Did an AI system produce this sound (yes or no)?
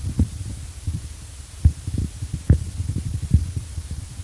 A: no